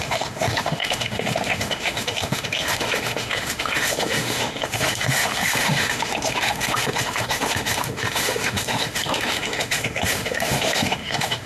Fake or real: fake